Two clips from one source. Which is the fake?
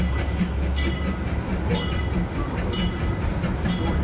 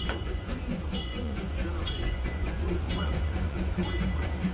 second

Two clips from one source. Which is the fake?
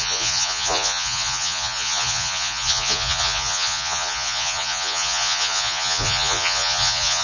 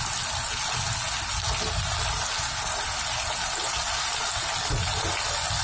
first